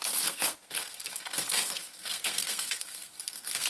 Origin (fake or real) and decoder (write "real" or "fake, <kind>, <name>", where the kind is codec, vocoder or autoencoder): fake, codec, SNAC